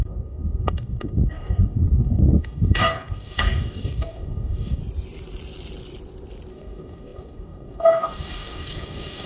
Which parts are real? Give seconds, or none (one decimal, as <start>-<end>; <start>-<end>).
4.8-6.5